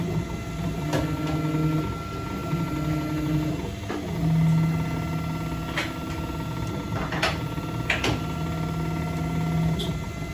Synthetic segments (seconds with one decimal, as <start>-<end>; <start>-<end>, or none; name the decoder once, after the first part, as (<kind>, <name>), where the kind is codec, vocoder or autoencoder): none